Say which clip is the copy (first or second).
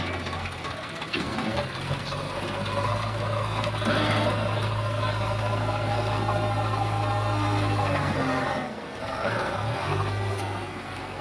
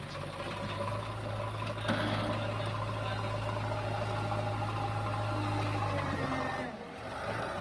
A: first